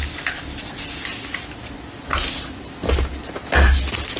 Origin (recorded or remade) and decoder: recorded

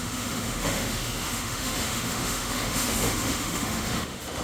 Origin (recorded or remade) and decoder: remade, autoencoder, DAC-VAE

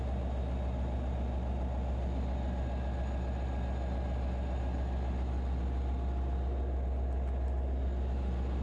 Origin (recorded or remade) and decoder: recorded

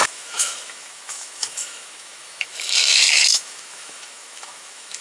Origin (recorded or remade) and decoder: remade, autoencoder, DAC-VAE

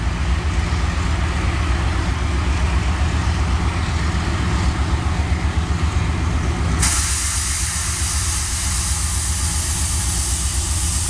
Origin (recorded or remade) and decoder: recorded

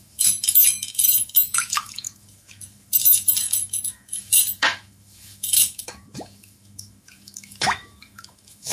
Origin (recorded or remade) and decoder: remade, autoencoder, DAC-VAE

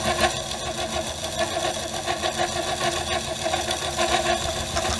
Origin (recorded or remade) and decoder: recorded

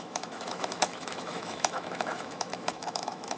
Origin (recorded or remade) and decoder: remade, autoencoder, DAC-VAE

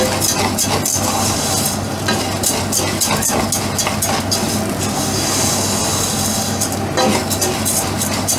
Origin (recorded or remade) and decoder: recorded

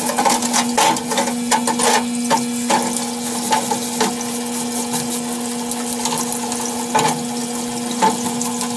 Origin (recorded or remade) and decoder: recorded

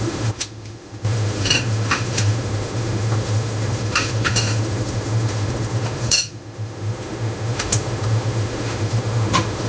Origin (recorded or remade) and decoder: remade, autoencoder, DAC-VAE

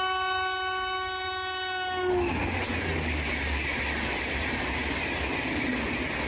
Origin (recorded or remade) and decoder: recorded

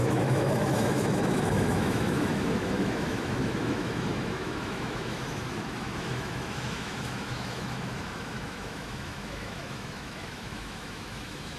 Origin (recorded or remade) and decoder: remade, autoencoder, DAC-VAE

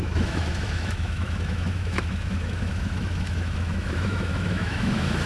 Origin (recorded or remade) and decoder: remade, autoencoder, DAC-VAE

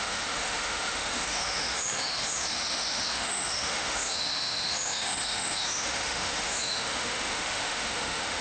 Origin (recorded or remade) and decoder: remade, autoencoder, DAC-VAE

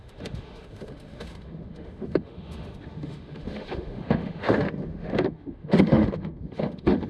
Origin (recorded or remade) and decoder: remade, autoencoder, DAC-VAE